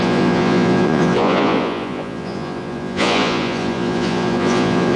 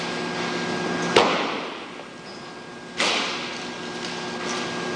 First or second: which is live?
second